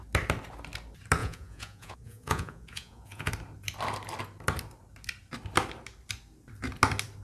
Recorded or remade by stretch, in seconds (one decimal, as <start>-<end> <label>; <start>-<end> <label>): 0.0-1.2 recorded; 1.2-3.3 remade; 3.3-7.2 recorded

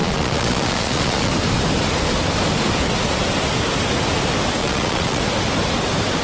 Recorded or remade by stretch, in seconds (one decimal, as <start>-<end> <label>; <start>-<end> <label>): 0.0-1.3 remade; 1.3-4.6 recorded; 4.6-5.2 remade; 5.2-6.2 recorded

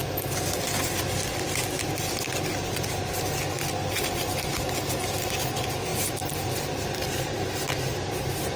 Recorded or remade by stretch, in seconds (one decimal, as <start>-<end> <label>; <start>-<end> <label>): 0.0-8.6 recorded

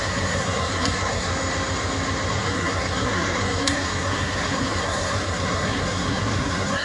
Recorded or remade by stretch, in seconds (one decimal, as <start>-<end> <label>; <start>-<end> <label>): 0.0-1.3 remade; 1.3-2.3 recorded; 2.3-6.8 remade

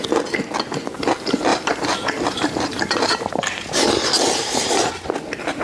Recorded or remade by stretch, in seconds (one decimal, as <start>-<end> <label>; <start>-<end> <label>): 0.0-1.5 recorded; 1.5-4.9 remade; 4.9-5.6 recorded